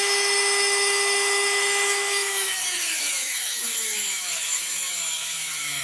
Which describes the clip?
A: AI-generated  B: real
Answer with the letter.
A